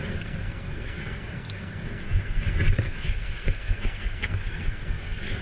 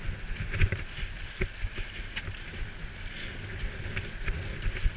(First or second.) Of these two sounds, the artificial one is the first